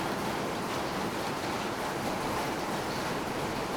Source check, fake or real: real